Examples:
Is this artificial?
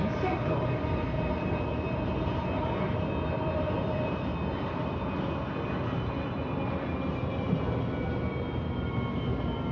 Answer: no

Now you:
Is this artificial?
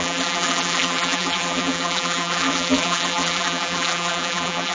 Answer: yes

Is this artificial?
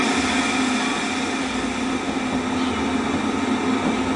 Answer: no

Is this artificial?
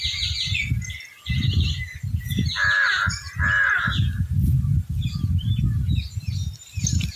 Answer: no